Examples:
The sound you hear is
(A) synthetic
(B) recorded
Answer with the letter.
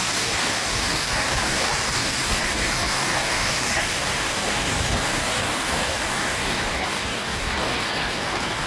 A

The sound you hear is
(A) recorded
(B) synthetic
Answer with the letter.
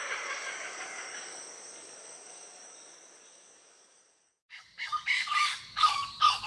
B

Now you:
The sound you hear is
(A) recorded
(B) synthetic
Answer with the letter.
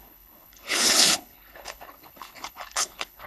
B